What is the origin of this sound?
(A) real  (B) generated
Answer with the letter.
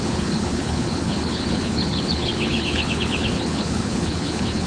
B